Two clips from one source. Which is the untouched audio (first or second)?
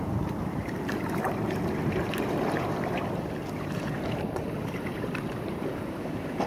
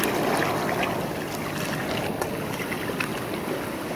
second